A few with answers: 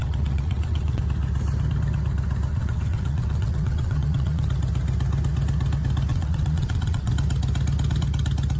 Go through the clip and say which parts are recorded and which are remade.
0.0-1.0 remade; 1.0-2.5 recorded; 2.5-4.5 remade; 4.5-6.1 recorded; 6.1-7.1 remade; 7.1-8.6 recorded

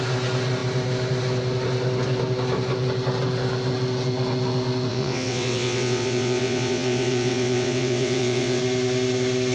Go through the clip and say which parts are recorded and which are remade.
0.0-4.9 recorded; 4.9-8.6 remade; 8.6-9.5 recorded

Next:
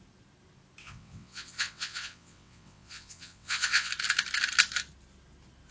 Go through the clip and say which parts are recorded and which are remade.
0.0-0.8 recorded; 0.8-3.9 remade; 3.9-5.7 recorded

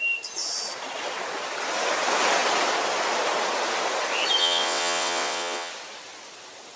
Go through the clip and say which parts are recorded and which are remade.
0.0-4.4 recorded; 4.4-5.7 remade; 5.7-6.8 recorded

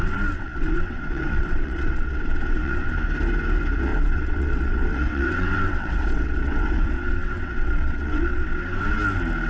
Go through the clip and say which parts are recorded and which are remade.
0.0-2.9 remade; 2.9-3.9 recorded; 3.9-9.0 remade; 9.0-9.5 recorded

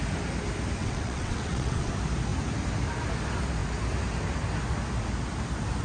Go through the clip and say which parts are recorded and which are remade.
0.0-0.8 recorded; 0.8-1.9 remade; 1.9-5.8 recorded